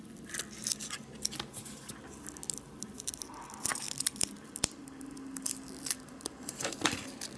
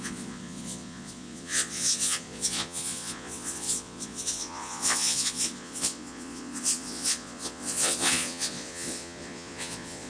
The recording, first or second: first